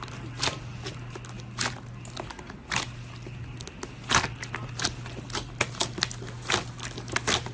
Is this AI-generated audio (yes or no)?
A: no